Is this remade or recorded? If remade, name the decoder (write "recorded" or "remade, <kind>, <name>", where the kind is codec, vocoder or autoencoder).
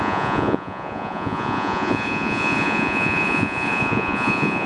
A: remade, vocoder, Vocos